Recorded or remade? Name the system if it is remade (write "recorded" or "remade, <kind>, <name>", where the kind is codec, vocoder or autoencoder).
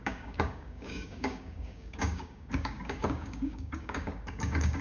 remade, codec, DAC